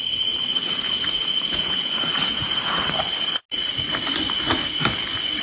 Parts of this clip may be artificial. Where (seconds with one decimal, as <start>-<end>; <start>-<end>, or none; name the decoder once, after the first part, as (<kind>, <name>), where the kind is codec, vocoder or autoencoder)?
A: 0.5-3.0 (vocoder, Vocos)

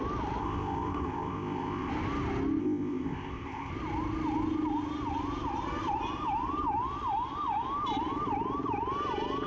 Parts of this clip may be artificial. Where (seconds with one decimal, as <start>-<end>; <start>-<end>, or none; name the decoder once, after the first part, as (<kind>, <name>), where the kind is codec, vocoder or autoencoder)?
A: 0.4-1.9 (codec, ZipCodec); 2.6-3.7

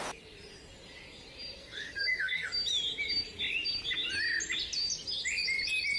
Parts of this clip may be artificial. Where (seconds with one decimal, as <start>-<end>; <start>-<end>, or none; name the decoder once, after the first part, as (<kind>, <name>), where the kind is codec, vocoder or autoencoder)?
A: 1.6-2.5 (codec, SNAC)

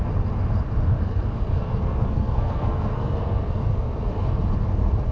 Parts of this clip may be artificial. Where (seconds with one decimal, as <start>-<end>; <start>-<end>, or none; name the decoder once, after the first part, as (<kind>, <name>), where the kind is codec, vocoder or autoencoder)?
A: 1.0-4.1 (codec, SNAC)